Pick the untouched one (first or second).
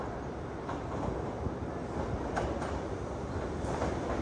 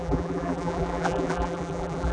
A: first